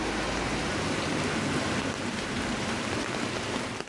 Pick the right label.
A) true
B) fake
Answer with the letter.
A